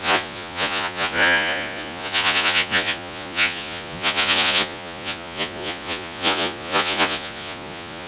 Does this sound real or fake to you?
fake